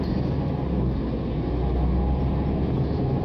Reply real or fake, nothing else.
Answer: real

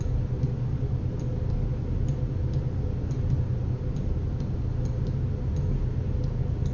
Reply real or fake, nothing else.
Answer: real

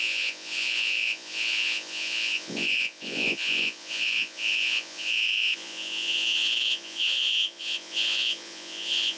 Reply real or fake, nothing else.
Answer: fake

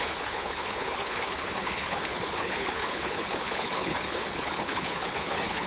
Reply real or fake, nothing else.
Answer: fake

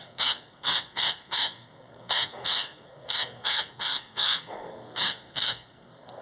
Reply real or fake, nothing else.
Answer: fake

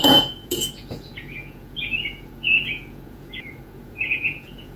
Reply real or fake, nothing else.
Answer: fake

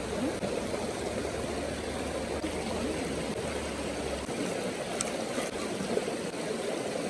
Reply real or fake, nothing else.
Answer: real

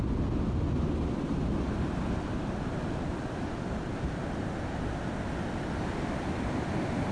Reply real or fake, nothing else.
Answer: real